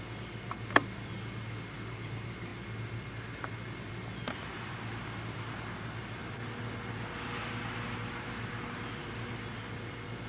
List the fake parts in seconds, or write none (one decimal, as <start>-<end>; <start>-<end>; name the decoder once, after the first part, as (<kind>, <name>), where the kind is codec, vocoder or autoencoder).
none